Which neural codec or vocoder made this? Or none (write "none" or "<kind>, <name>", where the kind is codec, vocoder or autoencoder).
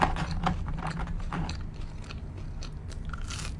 none